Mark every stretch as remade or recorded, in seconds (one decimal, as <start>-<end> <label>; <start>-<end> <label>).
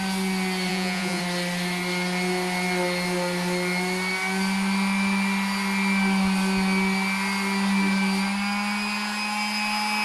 0.0-0.7 recorded; 0.7-1.2 remade; 1.2-10.0 recorded